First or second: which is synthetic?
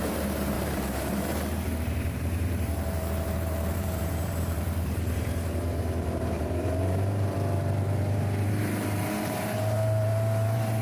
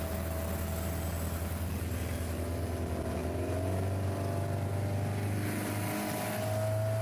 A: first